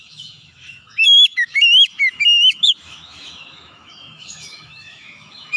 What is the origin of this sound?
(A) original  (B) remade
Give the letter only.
B